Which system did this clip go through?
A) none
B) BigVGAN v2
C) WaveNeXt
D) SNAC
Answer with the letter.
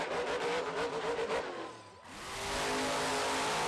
A